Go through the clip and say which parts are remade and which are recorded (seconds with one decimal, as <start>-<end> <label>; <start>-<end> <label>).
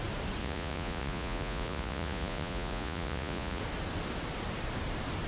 0.0-0.4 recorded; 0.4-3.6 remade; 3.6-5.3 recorded